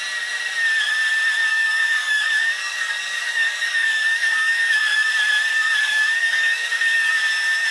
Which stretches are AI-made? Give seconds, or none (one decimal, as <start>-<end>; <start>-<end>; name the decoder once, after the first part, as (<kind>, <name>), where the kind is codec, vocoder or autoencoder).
1.5-5.1 (codec, DAC); 5.5-7.1